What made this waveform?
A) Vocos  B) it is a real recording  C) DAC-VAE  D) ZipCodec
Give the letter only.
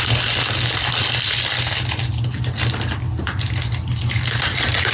B